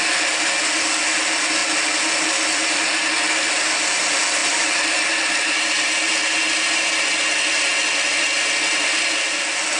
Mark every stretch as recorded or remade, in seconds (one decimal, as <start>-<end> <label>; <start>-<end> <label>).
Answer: 0.0-9.8 recorded